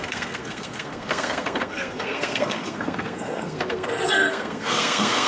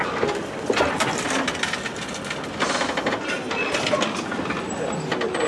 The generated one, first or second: first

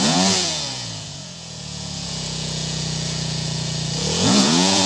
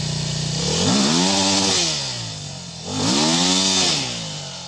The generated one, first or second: first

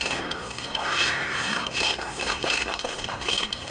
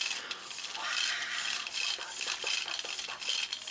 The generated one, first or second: first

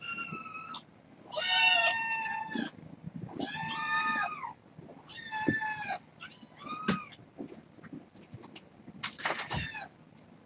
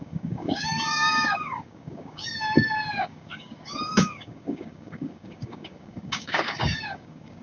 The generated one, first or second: second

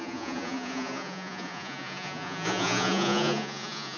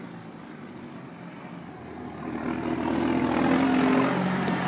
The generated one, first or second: first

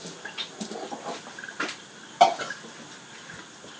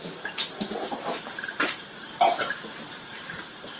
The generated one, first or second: second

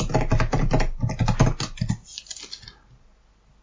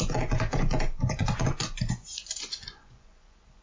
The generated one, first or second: second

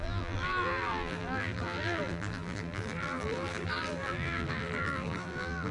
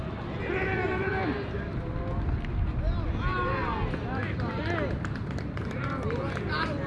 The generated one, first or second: first